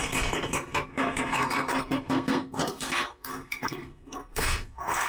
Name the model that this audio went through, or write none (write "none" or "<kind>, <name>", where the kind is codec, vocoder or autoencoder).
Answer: codec, SNAC